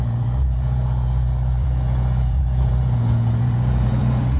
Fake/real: fake